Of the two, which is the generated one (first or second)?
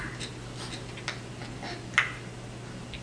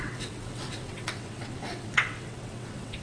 second